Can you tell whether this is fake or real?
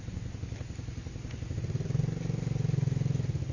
real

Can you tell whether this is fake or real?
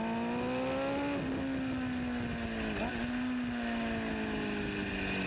real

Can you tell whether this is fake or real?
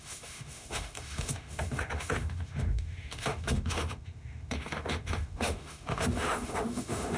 fake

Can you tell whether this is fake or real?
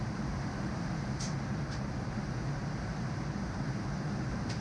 fake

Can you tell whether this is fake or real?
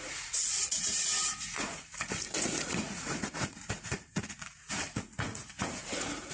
fake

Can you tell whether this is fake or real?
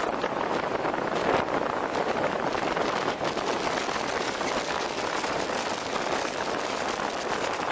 real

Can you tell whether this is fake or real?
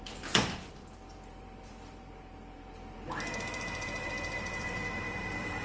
fake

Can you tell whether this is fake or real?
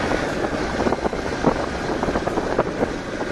real